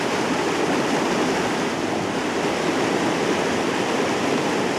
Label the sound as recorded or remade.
recorded